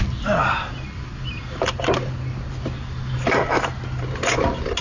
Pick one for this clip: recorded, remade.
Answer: recorded